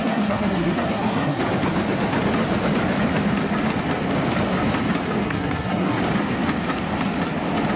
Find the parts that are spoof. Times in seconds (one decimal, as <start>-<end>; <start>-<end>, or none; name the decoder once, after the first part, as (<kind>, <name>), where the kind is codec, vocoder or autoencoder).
0.0-1.4 (codec, SNAC); 5.2-6.0